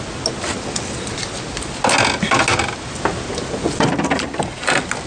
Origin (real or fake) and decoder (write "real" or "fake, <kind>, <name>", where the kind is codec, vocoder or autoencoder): real